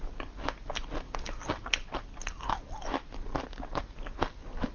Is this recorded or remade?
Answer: recorded